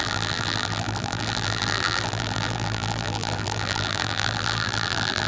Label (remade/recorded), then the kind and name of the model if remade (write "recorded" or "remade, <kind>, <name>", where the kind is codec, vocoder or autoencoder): remade, vocoder, BigVGAN v2